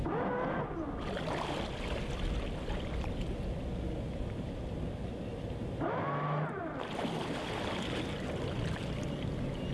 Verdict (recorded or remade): recorded